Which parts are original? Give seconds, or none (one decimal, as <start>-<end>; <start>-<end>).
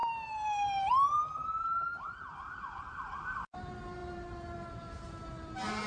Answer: none